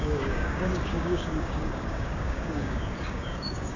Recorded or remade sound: remade